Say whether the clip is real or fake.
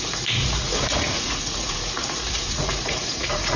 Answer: fake